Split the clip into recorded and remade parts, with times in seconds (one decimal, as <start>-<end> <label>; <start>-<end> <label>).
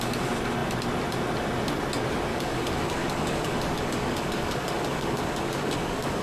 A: 0.0-2.3 recorded; 2.3-6.2 remade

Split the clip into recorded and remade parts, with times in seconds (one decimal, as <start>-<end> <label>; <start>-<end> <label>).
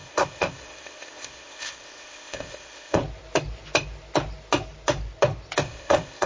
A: 0.0-3.0 remade; 3.0-5.6 recorded; 5.6-6.3 remade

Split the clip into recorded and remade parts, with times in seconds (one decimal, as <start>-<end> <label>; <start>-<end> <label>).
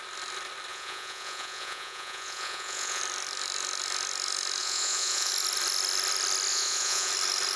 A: 0.0-0.7 recorded; 0.7-3.0 remade; 3.0-4.6 recorded; 4.6-5.3 remade; 5.3-6.5 recorded; 6.5-7.1 remade; 7.1-7.6 recorded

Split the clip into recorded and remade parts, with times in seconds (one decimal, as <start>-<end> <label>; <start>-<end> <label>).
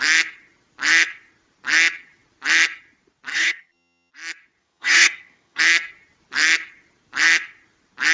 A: 0.0-3.3 recorded; 3.3-4.1 remade; 4.1-4.6 recorded; 4.6-5.6 remade; 5.6-8.1 recorded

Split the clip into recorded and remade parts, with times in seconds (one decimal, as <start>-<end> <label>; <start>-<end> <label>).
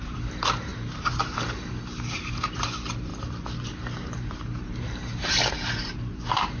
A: 0.0-6.6 remade